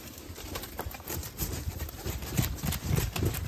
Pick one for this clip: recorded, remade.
remade